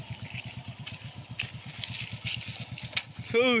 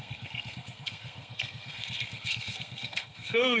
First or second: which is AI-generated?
second